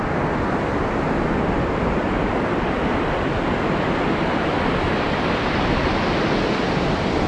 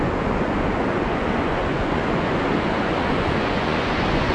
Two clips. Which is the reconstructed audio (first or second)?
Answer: second